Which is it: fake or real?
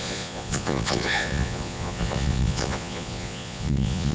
fake